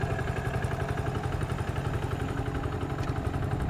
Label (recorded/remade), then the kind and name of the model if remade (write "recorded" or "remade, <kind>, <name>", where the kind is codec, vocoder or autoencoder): recorded